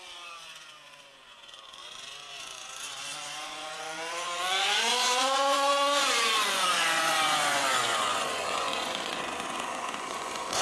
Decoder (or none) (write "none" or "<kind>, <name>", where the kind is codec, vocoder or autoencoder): vocoder, Vocos